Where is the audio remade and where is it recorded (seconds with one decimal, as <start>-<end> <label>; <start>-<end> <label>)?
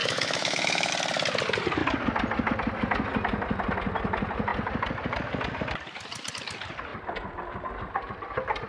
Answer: 0.0-0.9 remade; 0.9-8.7 recorded